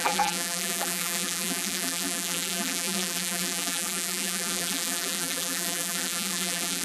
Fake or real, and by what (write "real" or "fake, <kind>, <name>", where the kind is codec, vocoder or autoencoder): fake, vocoder, BigVGAN v2